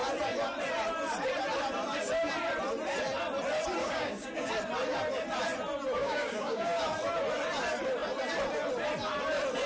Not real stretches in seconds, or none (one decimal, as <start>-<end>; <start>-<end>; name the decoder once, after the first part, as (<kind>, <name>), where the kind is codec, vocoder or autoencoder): 3.8-4.5 (codec, DAC); 6.0-6.8